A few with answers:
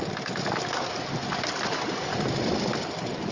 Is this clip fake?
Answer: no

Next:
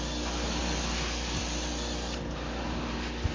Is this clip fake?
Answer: no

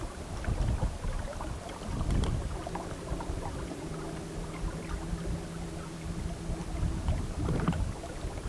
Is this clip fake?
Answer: no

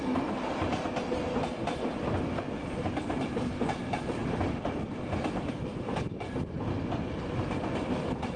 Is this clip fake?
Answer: no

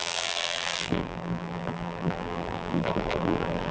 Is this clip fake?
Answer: yes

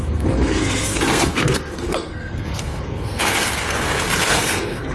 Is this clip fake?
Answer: yes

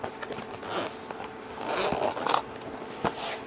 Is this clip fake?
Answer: no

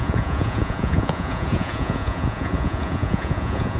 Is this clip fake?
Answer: yes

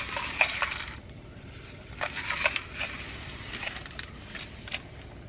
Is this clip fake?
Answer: yes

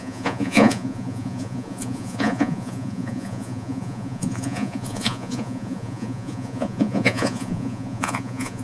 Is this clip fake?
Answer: yes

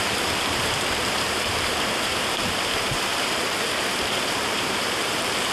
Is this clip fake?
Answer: yes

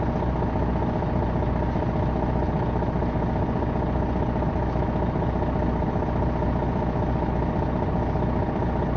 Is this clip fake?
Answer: no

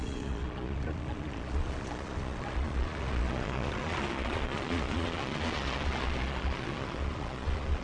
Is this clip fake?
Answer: yes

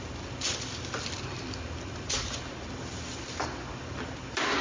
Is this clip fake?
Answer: no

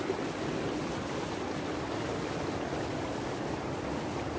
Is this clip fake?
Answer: no